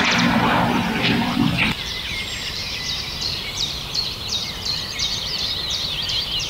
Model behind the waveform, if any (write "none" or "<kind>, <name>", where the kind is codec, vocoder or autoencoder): vocoder, BigVGAN v2